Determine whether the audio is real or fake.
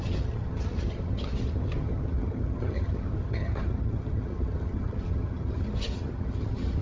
fake